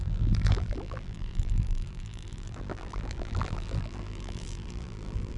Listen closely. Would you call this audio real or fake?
fake